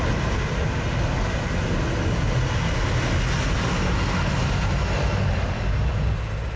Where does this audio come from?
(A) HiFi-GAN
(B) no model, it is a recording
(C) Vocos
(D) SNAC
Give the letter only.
B